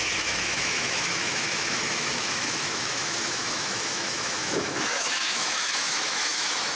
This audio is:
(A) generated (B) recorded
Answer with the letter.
A